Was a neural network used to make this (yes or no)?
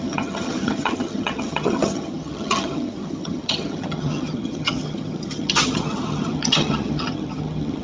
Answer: yes